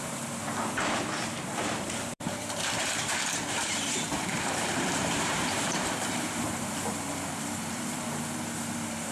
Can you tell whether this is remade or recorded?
remade